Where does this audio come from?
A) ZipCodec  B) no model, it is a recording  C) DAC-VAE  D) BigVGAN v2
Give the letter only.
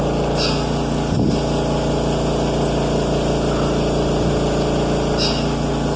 B